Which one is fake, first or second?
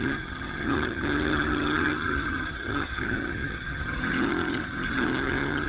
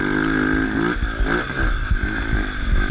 first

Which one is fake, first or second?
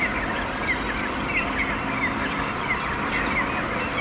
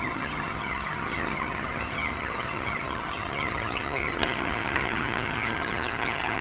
second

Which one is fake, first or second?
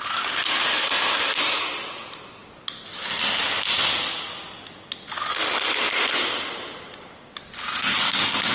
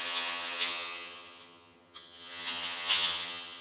second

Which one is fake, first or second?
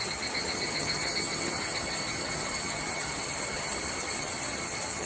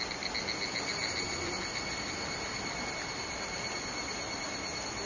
first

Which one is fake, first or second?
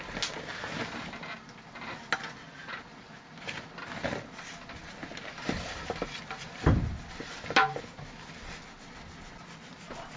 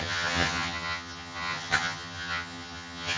second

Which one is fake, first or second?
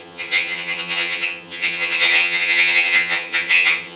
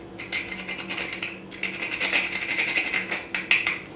first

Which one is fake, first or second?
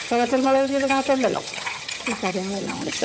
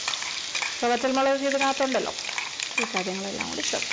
first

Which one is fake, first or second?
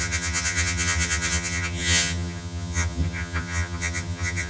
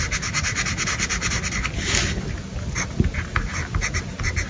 first